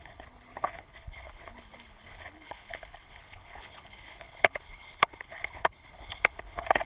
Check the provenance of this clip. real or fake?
fake